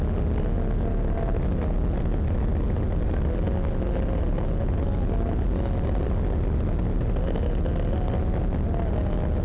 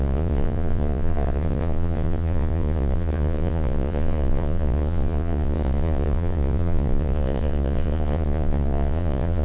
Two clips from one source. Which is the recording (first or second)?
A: first